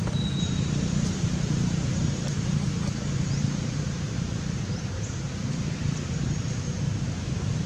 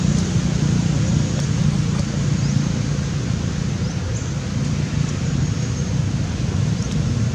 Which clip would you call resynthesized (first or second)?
first